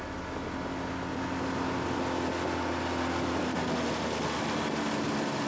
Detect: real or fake real